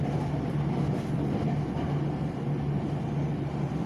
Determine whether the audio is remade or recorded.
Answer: recorded